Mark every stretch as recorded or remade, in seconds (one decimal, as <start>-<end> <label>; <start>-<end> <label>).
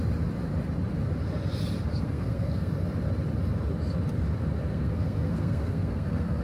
0.0-1.9 recorded; 1.9-2.7 remade; 2.7-4.7 recorded; 4.7-6.4 remade